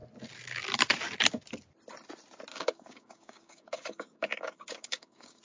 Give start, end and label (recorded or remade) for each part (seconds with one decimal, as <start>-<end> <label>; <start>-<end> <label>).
0.0-2.5 recorded; 2.5-5.4 remade